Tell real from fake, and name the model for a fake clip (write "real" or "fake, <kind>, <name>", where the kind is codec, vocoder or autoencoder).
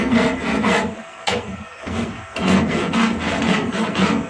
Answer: fake, codec, SNAC